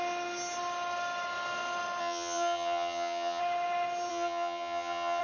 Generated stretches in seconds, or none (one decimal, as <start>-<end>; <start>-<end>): 2.0-3.4; 4.1-5.2